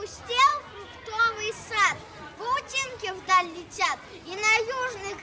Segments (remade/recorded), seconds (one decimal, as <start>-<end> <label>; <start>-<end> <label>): 0.0-5.2 recorded